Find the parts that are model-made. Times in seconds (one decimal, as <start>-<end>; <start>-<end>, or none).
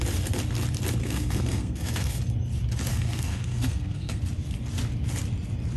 1.0-2.2; 2.9-4.2